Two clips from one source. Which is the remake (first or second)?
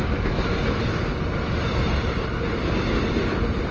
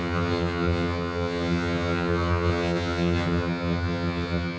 second